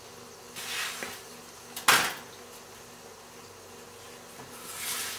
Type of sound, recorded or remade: recorded